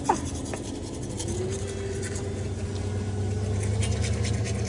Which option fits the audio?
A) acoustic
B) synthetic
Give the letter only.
A